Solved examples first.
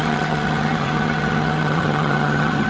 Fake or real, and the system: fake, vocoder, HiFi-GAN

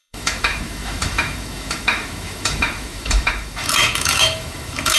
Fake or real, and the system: fake, autoencoder, DAC-VAE